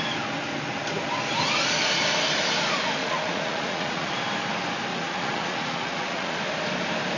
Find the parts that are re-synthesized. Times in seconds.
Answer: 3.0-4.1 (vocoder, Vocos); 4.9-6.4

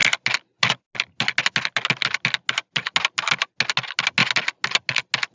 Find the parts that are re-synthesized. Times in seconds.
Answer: none

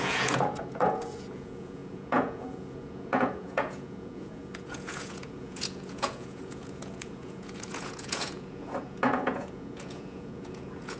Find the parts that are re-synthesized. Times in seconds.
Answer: 0.0-11.0 (vocoder, Vocos)

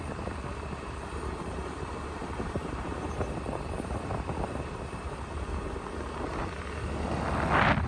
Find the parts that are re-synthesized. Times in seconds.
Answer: 2.2-5.2 (vocoder, BigVGAN v2)

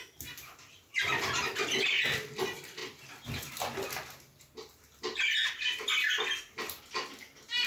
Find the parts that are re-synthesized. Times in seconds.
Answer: none

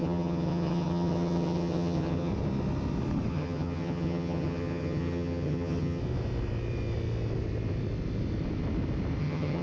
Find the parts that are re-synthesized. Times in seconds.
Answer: 0.0-2.3 (vocoder, HiFi-GAN); 3.3-6.0; 9.2-9.6